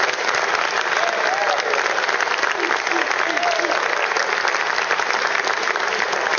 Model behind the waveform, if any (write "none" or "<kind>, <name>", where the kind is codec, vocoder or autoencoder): none